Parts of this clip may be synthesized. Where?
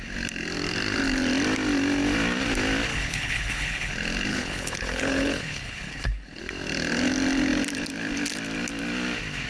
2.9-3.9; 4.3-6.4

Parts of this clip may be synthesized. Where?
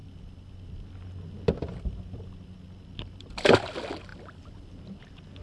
none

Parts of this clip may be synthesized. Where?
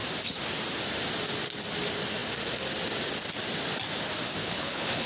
4.4-5.1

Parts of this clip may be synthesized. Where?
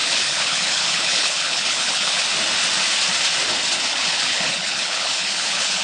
0.0-2.2; 3.9-5.8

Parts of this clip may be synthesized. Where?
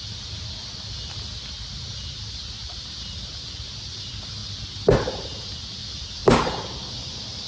none